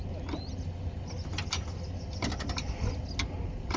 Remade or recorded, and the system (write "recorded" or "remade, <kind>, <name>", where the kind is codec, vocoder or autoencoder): recorded